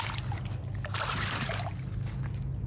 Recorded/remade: recorded